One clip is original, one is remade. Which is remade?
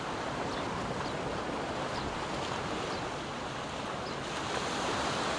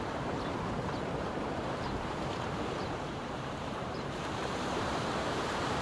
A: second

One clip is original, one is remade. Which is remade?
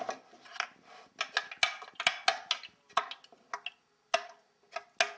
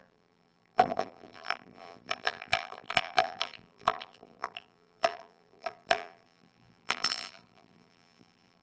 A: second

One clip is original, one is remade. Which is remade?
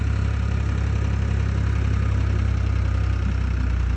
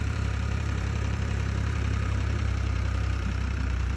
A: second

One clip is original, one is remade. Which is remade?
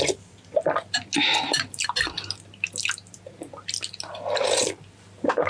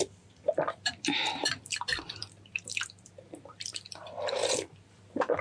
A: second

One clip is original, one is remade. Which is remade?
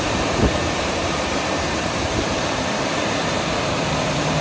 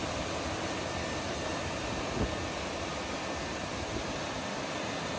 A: first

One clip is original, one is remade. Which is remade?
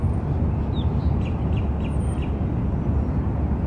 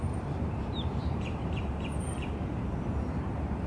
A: second